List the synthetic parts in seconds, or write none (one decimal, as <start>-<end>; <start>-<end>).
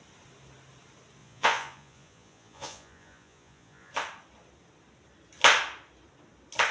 1.2-3.9